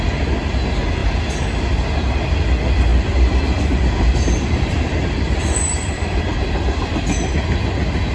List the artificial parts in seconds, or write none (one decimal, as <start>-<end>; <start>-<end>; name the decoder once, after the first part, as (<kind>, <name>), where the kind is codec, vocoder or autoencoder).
2.9-6.2 (vocoder, BigVGAN v2)